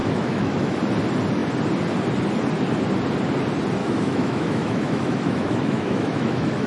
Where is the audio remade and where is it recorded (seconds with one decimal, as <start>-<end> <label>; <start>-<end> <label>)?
0.0-0.8 remade; 0.8-3.8 recorded; 3.8-6.7 remade